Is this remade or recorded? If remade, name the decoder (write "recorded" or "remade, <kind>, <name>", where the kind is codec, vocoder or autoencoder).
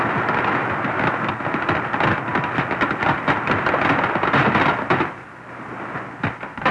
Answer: recorded